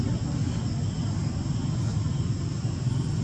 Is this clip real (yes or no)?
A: yes